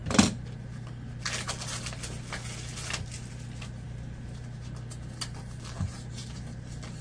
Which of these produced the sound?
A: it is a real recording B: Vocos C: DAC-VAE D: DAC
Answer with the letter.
A